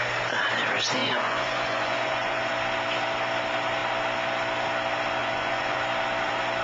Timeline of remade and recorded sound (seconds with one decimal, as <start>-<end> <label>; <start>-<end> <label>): 0.0-1.0 recorded; 1.0-2.5 remade; 2.5-5.2 recorded; 5.2-5.8 remade; 5.8-6.6 recorded